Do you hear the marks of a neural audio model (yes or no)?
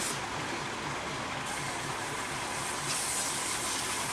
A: no